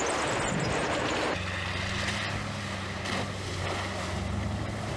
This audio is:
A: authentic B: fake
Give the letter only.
A